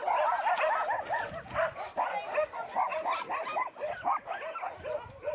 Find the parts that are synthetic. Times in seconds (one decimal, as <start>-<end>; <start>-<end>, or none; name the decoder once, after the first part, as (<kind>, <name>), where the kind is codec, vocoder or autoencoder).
none